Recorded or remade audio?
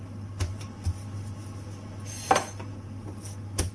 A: recorded